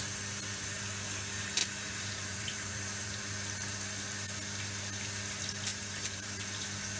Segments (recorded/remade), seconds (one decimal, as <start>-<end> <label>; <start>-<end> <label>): 0.0-1.6 recorded; 1.6-3.2 remade; 3.2-5.7 recorded; 5.7-6.4 remade; 6.4-7.0 recorded